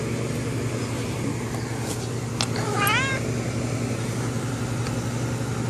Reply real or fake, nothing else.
real